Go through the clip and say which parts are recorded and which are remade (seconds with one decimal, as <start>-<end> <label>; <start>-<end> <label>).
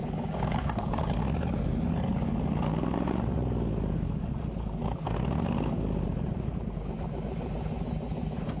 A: 0.0-1.0 remade; 1.0-8.6 recorded